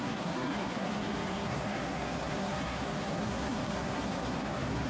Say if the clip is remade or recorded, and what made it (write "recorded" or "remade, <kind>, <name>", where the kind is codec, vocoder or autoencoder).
remade, codec, SNAC